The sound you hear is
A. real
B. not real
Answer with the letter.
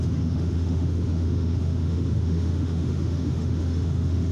B